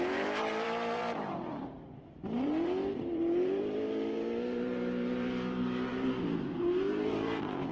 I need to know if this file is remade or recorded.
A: remade